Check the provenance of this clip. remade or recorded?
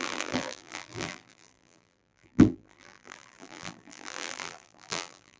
remade